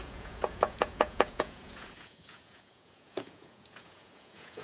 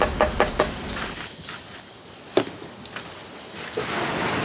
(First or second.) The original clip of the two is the second